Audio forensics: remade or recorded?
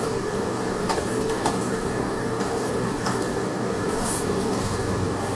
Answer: remade